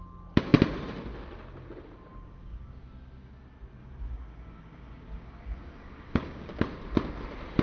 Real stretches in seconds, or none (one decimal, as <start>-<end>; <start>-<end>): 0.0-2.1; 2.8-3.8; 6.6-7.6